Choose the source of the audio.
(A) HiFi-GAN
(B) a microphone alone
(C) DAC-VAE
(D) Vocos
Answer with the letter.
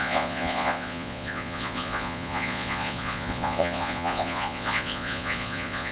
D